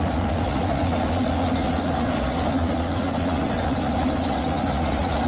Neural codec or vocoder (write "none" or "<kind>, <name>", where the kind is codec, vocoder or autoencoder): vocoder, Vocos